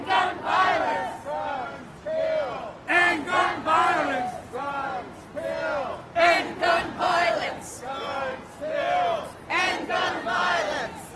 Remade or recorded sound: recorded